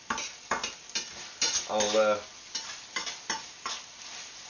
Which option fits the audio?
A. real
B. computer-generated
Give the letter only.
A